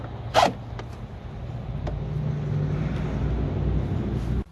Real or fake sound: real